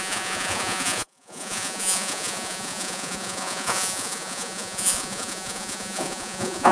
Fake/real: fake